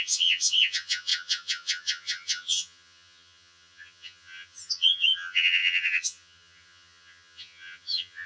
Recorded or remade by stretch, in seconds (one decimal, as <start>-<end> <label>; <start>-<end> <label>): 0.0-8.3 remade